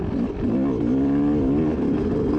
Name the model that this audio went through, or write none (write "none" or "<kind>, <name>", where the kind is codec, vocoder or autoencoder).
none